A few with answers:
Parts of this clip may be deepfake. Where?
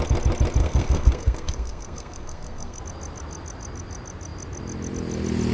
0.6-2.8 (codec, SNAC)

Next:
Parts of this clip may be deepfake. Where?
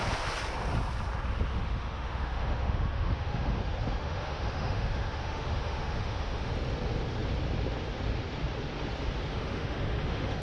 1.5-3.6 (autoencoder, DAC-VAE); 4.0-6.5; 9.3-10.4